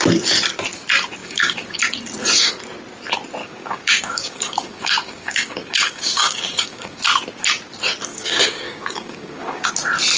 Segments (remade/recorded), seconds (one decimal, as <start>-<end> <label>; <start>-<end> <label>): 0.0-1.2 recorded; 1.2-1.8 remade; 1.8-3.4 recorded; 3.4-7.0 remade; 7.0-8.1 recorded; 8.1-9.7 remade; 9.7-10.2 recorded

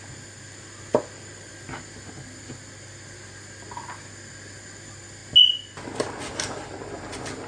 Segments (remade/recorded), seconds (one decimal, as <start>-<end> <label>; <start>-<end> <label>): 0.0-7.5 recorded

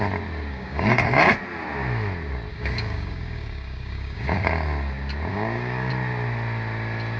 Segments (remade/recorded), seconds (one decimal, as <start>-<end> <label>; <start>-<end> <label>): 0.0-0.5 recorded; 0.5-1.3 remade; 1.3-2.5 recorded; 2.5-4.5 remade; 4.5-5.3 recorded; 5.3-5.9 remade; 5.9-7.2 recorded

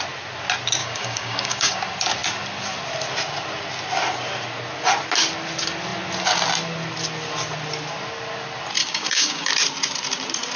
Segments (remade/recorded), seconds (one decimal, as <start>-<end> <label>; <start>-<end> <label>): 0.0-0.8 recorded; 0.8-1.8 remade; 1.8-8.8 recorded; 8.8-9.5 remade; 9.5-10.6 recorded

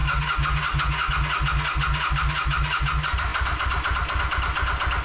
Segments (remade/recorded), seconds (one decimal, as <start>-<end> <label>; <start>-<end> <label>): 0.0-1.1 remade; 1.1-5.0 recorded

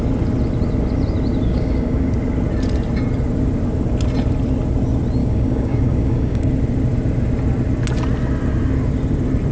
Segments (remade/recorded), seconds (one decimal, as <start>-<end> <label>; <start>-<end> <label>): 0.0-1.5 recorded; 1.5-2.1 remade; 2.1-5.2 recorded; 5.2-6.5 remade; 6.5-9.5 recorded

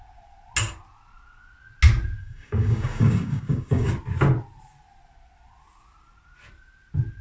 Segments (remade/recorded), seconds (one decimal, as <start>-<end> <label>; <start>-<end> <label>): 0.0-2.2 recorded; 2.2-3.9 remade; 3.9-7.2 recorded

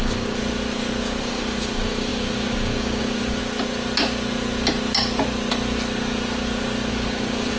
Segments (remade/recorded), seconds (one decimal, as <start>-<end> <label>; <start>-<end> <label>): 0.0-0.4 remade; 0.4-1.2 recorded; 1.2-3.4 remade; 3.4-6.9 recorded; 6.9-7.6 remade